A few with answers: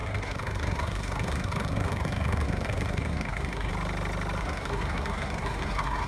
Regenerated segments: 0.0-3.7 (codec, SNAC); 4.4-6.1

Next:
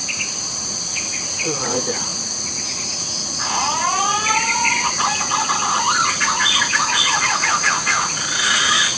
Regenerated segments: 0.6-9.0 (vocoder, Vocos)

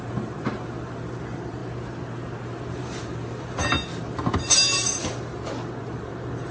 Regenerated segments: 0.0-1.6 (vocoder, BigVGAN v2); 2.7-6.5